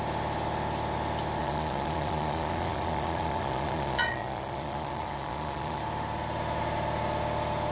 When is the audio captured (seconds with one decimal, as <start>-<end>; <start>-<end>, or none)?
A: 0.0-1.4; 5.8-7.7